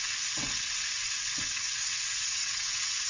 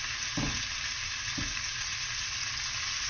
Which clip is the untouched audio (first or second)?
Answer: second